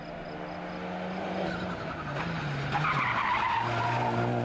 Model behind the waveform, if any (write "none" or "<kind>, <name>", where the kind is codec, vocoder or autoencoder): none